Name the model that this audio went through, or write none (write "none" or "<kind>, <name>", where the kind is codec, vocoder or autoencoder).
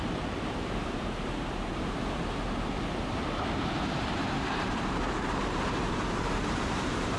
vocoder, BigVGAN v2